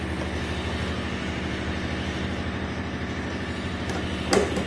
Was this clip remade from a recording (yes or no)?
no